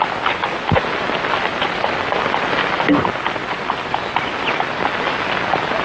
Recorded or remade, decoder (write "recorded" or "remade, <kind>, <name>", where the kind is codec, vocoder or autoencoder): recorded